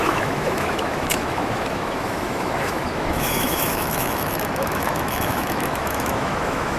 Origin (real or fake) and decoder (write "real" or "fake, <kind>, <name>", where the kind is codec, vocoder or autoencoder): fake, autoencoder, DAC-VAE